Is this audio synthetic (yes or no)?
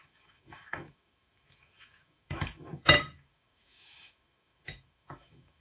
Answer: yes